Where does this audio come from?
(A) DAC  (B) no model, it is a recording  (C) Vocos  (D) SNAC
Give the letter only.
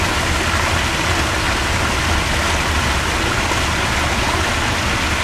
B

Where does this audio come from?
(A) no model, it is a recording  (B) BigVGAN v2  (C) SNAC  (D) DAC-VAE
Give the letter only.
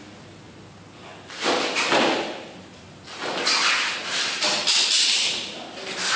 A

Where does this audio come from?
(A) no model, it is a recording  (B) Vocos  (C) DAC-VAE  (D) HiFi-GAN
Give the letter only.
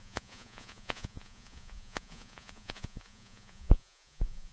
B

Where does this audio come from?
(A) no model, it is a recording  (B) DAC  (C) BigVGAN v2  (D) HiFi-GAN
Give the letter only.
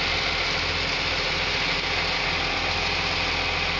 A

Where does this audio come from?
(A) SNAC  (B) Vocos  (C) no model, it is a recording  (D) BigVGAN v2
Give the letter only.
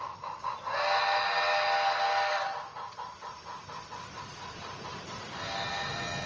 C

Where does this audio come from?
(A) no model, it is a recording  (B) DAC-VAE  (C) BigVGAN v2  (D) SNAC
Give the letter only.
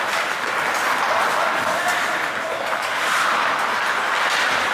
A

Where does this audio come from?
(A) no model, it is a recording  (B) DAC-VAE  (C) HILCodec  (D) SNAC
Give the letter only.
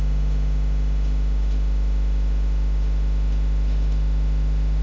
B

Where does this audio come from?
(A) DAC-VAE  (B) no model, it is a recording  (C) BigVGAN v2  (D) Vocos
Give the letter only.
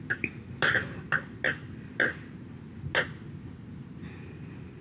B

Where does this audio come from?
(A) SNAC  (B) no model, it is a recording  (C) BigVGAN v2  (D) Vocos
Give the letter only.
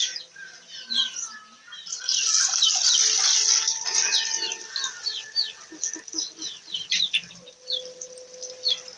B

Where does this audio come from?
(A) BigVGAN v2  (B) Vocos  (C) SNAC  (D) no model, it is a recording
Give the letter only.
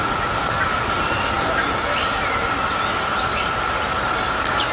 D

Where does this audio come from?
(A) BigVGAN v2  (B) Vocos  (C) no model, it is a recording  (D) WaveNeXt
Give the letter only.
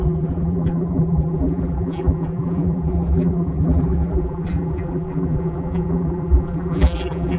A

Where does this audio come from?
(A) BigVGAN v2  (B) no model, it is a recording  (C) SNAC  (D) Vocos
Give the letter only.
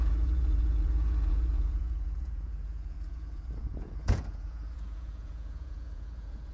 D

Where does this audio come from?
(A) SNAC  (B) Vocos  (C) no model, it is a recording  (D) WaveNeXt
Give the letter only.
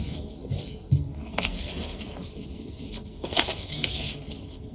A